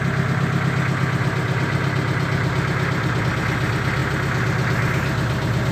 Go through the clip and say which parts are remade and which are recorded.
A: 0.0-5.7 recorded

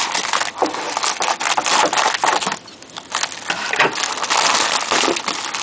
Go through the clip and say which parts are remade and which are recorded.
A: 0.0-5.6 recorded

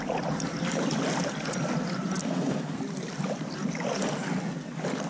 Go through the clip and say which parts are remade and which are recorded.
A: 0.0-2.2 recorded; 2.2-2.8 remade; 2.8-5.1 recorded

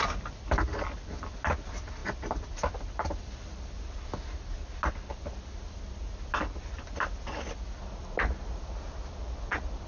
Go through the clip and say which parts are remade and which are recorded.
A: 0.0-9.9 recorded

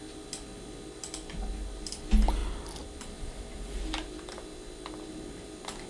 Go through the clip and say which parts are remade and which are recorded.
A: 0.0-5.9 recorded

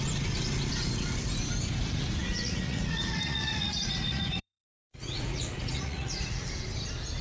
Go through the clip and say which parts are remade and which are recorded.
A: 0.0-2.2 recorded; 2.2-6.5 remade; 6.5-7.2 recorded

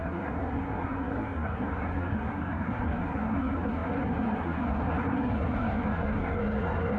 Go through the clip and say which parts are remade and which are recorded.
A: 0.0-7.0 remade